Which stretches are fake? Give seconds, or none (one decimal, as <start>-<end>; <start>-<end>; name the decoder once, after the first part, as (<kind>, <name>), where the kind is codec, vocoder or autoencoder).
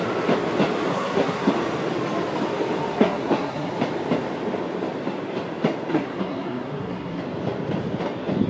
0.9-1.5 (codec, SNAC); 2.9-3.7; 5.9-7.2